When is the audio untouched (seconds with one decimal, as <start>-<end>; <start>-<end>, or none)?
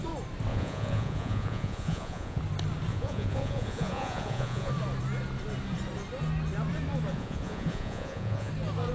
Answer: 0.0-0.5; 2.4-2.9; 4.7-7.1; 8.5-8.9